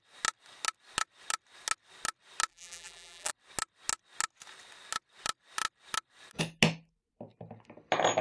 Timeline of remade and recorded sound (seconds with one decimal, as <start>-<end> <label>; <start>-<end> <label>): 0.0-2.5 recorded; 2.5-3.3 remade; 3.3-8.2 recorded